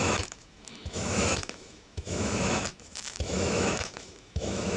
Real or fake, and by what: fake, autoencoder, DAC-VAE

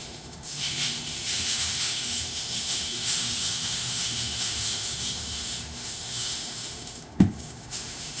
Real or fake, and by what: fake, autoencoder, DAC-VAE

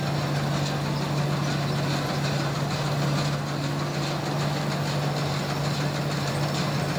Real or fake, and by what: real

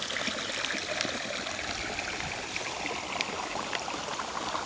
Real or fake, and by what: real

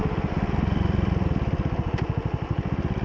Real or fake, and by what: real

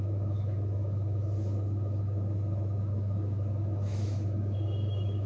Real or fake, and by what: fake, autoencoder, DAC-VAE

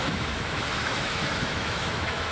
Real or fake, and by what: fake, autoencoder, DAC-VAE